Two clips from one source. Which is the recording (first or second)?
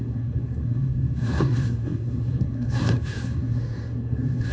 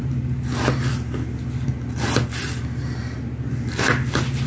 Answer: second